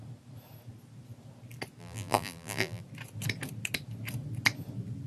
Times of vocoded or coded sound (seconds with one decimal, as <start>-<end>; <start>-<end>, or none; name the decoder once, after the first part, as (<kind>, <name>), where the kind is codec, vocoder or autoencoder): 1.8-2.8 (vocoder, BigVGAN v2)